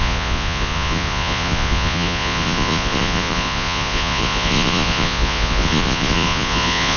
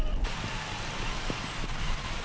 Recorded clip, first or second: second